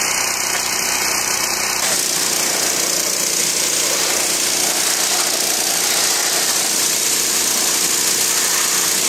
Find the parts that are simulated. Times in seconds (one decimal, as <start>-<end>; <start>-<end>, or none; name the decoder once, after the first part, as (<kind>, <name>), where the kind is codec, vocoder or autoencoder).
6.2-7.4 (vocoder, BigVGAN v2)